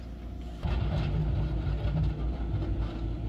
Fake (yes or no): no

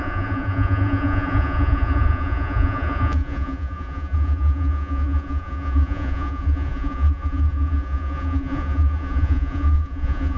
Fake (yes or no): yes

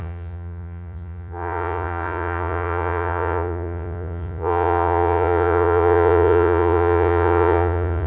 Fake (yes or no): yes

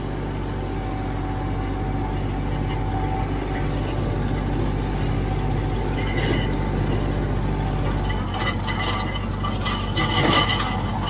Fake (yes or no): no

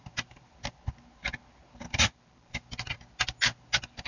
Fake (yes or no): no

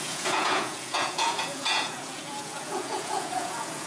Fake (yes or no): yes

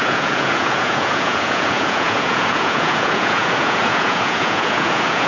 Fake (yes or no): yes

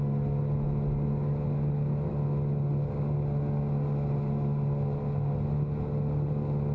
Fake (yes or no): no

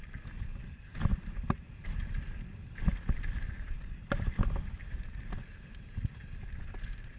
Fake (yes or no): no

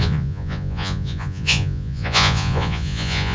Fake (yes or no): yes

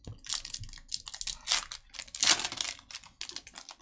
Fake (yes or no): no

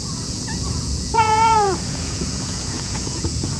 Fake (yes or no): yes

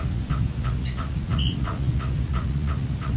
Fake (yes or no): yes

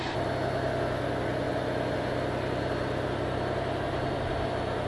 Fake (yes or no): no